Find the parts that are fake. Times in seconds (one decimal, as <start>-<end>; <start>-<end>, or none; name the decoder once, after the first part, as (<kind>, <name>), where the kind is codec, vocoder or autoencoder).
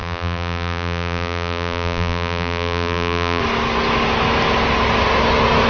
0.0-3.4 (vocoder, BigVGAN v2)